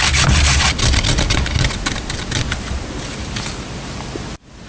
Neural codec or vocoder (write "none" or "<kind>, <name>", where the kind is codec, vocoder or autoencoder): none